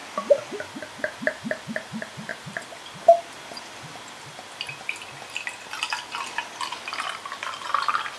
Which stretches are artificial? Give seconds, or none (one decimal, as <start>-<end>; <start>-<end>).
none